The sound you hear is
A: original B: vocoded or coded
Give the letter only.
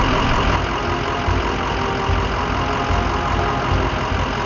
A